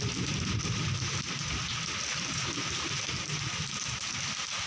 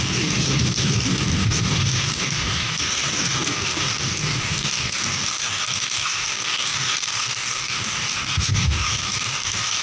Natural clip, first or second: first